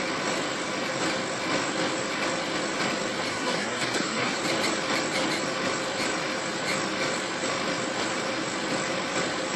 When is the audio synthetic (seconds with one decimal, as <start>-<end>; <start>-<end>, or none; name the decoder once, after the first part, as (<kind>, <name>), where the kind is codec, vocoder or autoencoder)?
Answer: 3.3-4.4 (codec, SNAC)